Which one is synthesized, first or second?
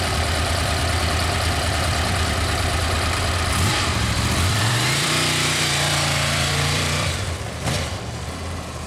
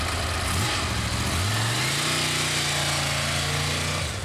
first